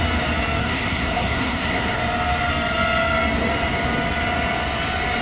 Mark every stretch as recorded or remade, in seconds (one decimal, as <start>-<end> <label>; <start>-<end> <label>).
0.0-0.6 recorded; 0.6-2.0 remade; 2.0-5.2 recorded